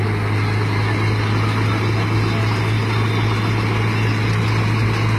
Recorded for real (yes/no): yes